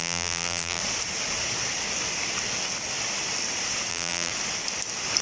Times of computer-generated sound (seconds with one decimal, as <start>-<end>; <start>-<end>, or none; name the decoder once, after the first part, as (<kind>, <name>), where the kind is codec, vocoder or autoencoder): 0.0-0.8 (vocoder, BigVGAN v2); 3.9-4.3